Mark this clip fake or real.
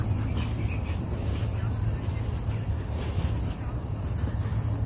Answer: real